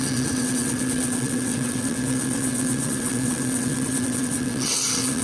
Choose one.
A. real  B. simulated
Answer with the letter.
B